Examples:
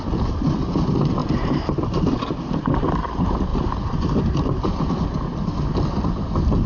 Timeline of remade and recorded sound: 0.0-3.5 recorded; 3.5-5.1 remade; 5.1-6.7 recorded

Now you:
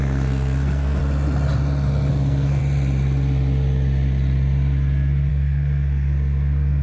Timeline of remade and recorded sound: 0.0-1.0 remade; 1.0-2.1 recorded; 2.1-2.6 remade; 2.6-5.3 recorded; 5.3-6.8 remade

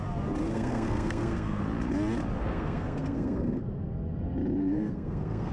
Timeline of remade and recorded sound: 0.0-0.4 recorded; 0.4-1.6 remade; 1.6-2.4 recorded; 2.4-3.8 remade; 3.8-4.6 recorded; 4.6-5.5 remade

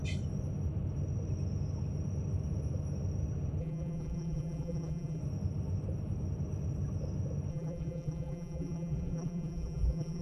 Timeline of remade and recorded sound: 0.0-3.6 recorded; 3.6-5.2 remade; 5.2-7.5 recorded; 7.5-10.2 remade